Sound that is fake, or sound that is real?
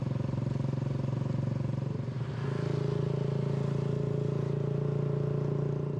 real